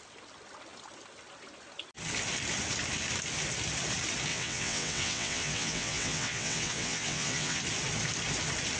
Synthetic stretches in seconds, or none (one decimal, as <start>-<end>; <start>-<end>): 4.3-7.6